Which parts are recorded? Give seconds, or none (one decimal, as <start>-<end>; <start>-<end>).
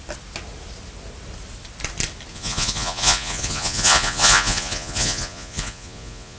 0.0-2.3